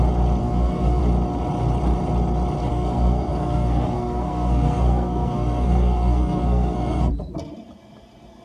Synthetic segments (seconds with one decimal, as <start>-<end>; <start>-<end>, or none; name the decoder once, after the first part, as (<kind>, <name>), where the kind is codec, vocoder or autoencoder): 0.4-1.0 (codec, SNAC); 2.7-7.1